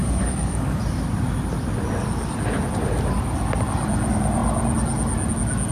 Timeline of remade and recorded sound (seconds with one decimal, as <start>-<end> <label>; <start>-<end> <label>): 0.0-0.8 remade; 0.8-5.7 recorded